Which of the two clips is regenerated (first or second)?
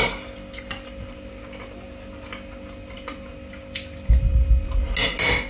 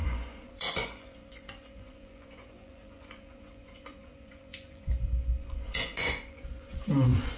second